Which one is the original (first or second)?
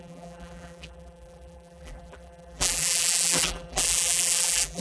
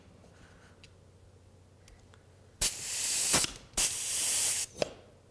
second